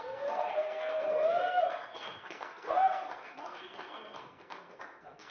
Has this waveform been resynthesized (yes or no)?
yes